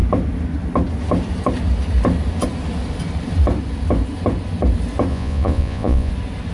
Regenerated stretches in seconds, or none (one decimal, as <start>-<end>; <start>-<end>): 5.1-6.1